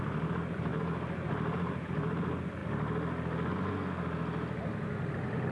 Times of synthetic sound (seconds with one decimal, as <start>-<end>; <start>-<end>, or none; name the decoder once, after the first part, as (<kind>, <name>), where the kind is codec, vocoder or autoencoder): 0.0-2.6 (vocoder, BigVGAN v2); 5.1-5.5

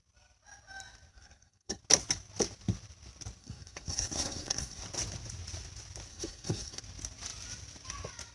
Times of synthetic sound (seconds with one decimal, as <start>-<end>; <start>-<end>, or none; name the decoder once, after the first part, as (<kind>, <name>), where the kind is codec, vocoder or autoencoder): 1.1-1.8 (codec, SNAC); 3.4-4.8; 6.1-6.8

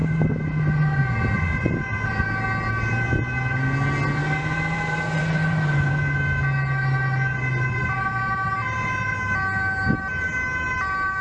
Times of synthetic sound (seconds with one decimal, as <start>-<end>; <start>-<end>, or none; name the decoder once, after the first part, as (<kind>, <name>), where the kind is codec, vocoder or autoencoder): 4.2-5.9 (vocoder, BigVGAN v2)